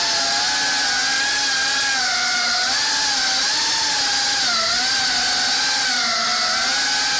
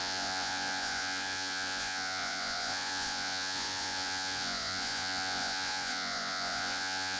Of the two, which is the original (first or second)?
first